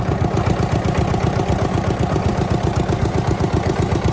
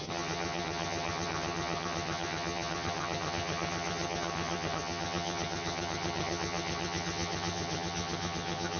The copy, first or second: second